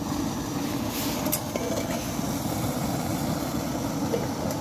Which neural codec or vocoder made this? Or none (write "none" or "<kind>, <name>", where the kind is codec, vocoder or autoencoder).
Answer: none